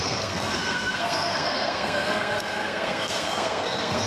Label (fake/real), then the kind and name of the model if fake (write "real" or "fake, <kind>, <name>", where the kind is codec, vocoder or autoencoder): fake, codec, SNAC